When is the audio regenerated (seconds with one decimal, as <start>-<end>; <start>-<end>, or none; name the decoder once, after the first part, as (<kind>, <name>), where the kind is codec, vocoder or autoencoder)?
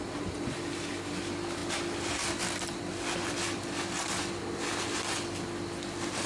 none